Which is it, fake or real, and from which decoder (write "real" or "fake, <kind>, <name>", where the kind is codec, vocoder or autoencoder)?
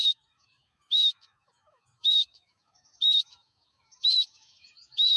fake, autoencoder, DAC-VAE